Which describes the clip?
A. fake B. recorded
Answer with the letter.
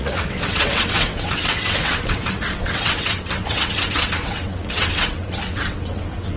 A